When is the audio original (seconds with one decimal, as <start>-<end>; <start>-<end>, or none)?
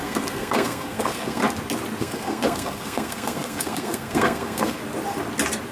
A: 1.4-2.0; 4.8-5.7